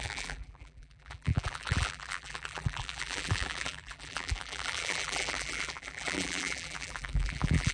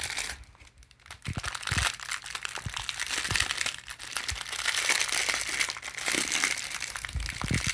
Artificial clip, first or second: first